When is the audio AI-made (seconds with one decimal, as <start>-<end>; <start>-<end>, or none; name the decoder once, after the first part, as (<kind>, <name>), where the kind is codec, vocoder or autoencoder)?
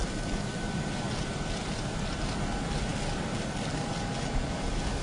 none